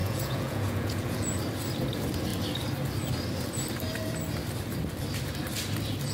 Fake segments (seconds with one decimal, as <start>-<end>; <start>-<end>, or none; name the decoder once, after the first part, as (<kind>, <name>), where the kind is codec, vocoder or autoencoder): 0.0-1.4 (vocoder, Vocos)